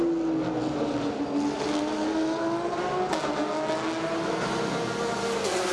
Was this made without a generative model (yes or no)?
yes